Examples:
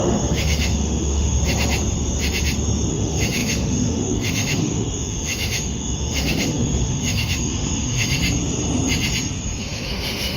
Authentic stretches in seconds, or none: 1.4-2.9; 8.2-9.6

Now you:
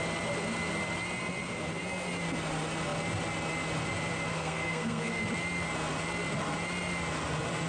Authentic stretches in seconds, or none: 0.0-4.3; 5.2-7.7

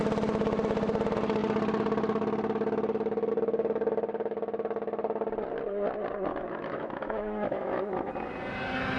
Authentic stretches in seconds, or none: 0.0-6.3; 8.1-9.0

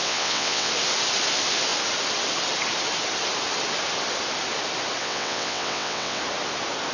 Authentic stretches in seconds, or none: 0.7-5.0; 6.2-6.9

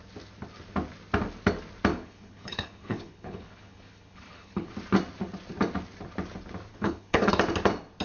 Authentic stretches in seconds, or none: 0.0-1.9; 4.7-6.7; 7.3-8.0

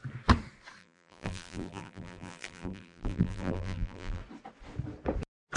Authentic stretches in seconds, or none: 0.0-0.8; 4.2-5.6

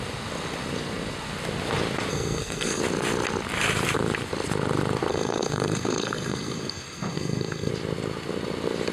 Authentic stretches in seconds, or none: 0.0-2.1; 2.8-5.1; 7.7-8.9

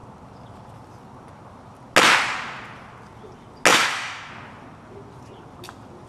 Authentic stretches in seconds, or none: 0.0-3.7; 4.3-6.1